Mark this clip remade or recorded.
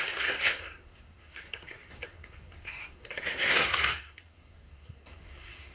remade